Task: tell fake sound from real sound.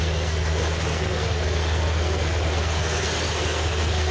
fake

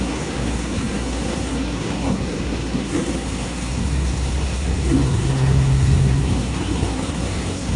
fake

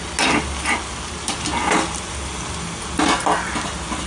real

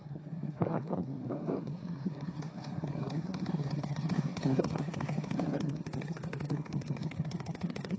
fake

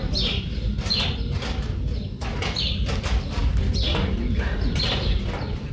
real